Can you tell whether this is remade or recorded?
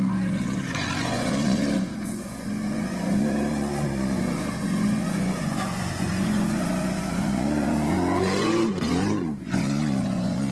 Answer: remade